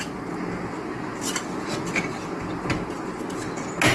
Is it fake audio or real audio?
real